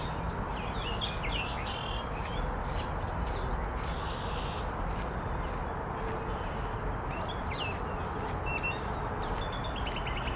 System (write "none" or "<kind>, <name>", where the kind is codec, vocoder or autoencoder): none